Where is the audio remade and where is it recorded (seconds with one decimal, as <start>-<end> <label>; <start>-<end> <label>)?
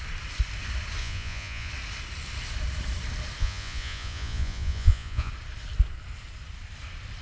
0.0-1.0 recorded; 1.0-1.7 remade; 1.7-3.4 recorded; 3.4-5.3 remade; 5.3-7.2 recorded